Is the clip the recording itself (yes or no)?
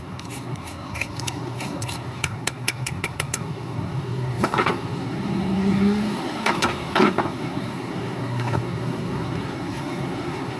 no